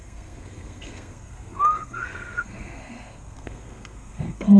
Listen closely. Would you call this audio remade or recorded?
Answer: remade